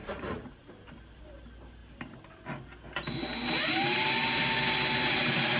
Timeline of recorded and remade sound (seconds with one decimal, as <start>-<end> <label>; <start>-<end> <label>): 0.0-0.7 remade; 0.7-5.6 recorded